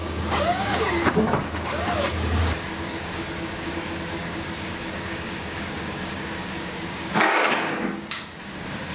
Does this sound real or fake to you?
fake